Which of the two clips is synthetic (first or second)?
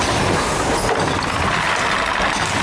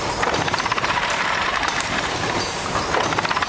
second